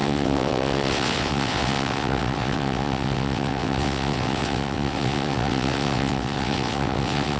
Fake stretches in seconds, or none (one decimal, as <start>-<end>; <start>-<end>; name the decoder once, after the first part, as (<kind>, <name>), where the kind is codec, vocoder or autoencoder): 0.0-7.4 (vocoder, WaveNeXt)